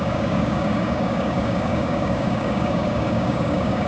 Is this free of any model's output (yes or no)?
no